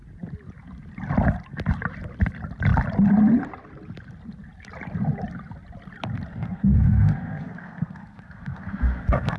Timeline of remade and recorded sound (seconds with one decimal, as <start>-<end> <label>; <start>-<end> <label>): 0.0-6.3 recorded; 6.3-9.4 remade